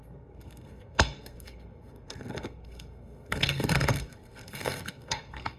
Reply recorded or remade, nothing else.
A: remade